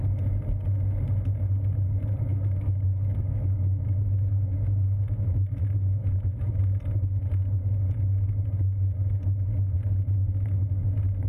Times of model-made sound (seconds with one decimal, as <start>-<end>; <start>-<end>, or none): 2.3-6.6